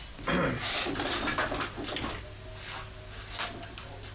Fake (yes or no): no